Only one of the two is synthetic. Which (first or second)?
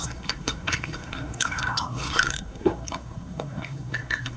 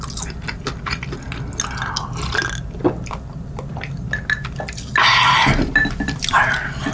first